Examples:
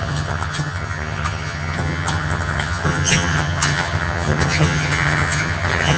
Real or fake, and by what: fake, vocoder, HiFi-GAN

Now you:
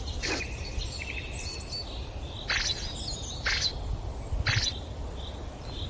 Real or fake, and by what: real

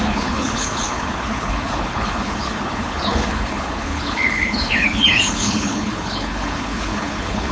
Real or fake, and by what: fake, codec, HILCodec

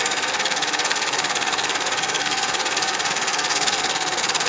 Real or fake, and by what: fake, codec, SNAC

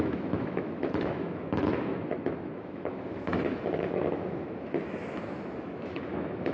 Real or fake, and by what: fake, autoencoder, DAC-VAE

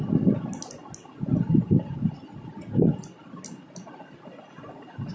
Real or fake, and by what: real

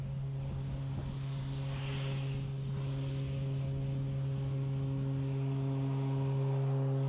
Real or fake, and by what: real